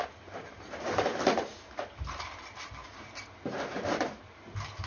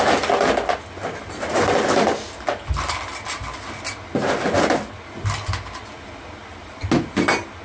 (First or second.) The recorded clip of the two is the second